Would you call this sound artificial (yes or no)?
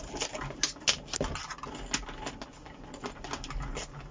no